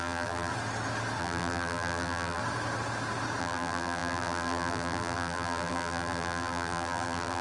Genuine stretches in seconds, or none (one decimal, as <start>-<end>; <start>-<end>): 0.5-1.2; 2.4-3.4